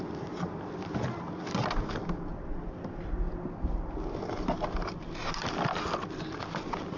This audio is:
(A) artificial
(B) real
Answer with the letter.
B